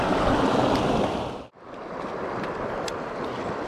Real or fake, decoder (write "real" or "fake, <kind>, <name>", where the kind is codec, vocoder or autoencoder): real